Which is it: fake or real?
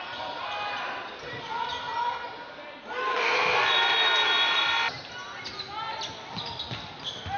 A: real